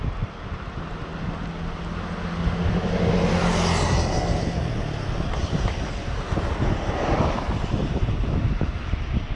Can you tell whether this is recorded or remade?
recorded